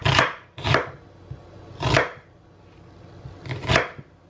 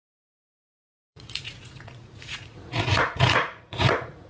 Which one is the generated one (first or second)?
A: second